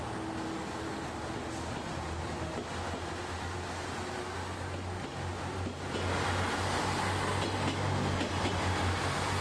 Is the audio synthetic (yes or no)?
no